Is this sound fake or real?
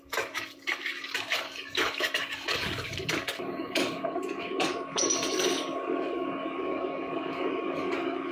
fake